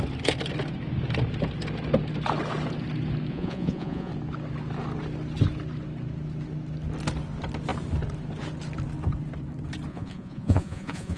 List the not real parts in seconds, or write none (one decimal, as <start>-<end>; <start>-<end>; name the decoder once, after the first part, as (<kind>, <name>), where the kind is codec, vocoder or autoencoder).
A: 3.3-4.1 (vocoder, Vocos); 9.9-11.2